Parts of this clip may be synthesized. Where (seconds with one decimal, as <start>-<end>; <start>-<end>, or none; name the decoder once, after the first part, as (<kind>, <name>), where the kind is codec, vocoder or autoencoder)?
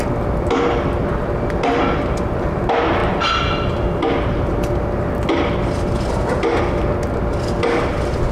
none